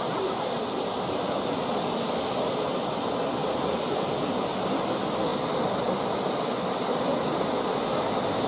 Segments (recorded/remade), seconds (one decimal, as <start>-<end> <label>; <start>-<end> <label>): 0.0-5.3 recorded; 5.3-5.8 remade; 5.8-8.5 recorded